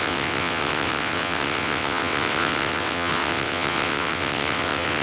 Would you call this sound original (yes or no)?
no